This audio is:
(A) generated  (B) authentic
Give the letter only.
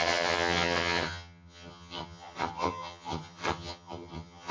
A